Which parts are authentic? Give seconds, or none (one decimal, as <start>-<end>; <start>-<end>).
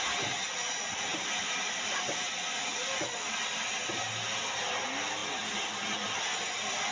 0.0-1.1; 2.3-6.9